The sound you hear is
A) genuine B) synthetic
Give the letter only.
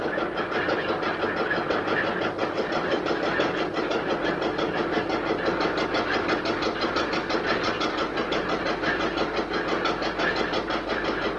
A